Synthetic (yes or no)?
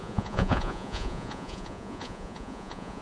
yes